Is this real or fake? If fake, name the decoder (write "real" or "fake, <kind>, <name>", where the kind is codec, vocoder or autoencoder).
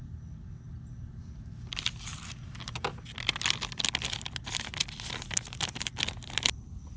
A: real